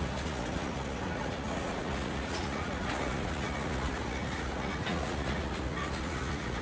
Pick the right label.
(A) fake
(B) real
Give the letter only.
A